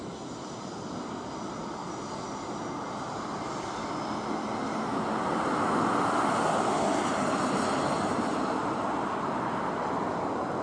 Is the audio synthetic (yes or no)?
no